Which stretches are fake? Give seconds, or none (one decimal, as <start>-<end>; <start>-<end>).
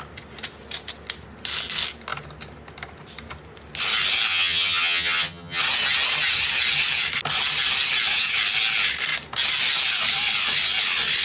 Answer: 4.3-5.6